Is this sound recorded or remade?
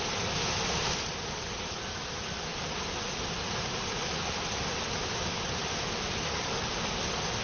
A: recorded